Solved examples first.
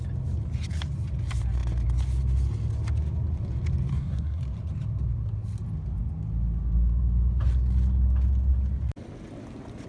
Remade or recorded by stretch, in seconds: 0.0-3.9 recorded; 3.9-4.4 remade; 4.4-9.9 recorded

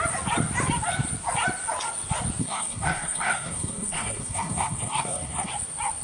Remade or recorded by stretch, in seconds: 0.0-2.4 recorded; 2.4-5.5 remade; 5.5-6.0 recorded

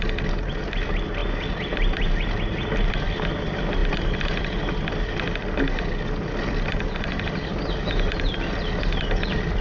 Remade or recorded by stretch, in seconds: 0.0-9.6 recorded

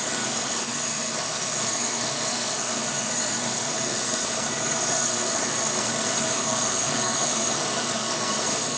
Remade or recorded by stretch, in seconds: 0.0-8.8 remade

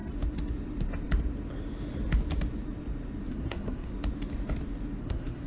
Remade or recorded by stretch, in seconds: 0.0-3.3 recorded; 3.3-3.9 remade; 3.9-5.0 recorded; 5.0-5.5 remade